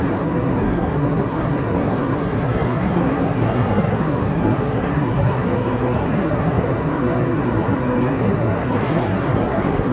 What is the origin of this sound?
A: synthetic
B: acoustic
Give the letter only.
A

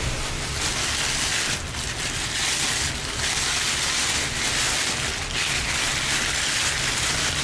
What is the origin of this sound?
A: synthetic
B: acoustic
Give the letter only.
B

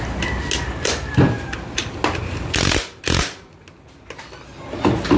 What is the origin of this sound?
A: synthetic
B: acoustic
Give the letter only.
B